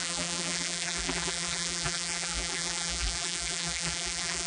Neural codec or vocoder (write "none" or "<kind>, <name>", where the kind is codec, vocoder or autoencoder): vocoder, BigVGAN v2